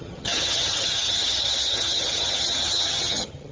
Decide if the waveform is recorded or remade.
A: remade